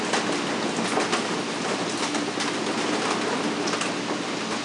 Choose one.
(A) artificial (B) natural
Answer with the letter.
B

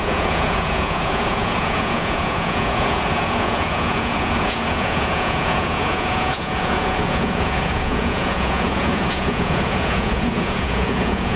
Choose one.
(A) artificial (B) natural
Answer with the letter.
A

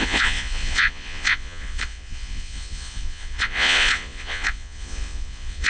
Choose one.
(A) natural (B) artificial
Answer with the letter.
B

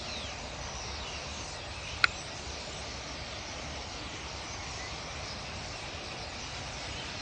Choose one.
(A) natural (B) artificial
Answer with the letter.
A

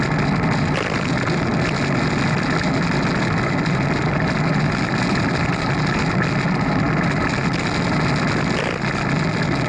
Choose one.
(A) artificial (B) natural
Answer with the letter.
B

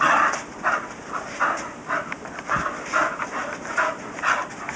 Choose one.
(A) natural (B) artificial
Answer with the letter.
A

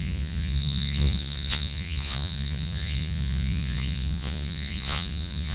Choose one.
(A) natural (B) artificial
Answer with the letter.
B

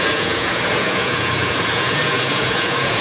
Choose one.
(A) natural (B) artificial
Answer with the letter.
B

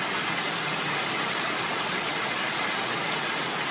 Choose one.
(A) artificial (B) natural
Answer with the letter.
B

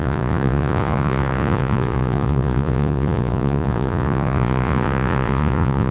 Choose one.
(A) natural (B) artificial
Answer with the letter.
B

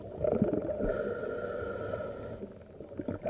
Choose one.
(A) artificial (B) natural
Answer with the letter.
B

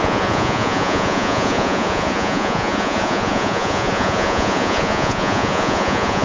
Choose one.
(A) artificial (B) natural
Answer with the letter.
A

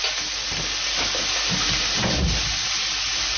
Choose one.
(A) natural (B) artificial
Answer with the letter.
A